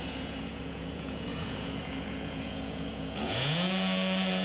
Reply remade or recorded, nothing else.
remade